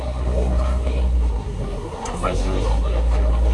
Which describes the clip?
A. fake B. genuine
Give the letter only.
A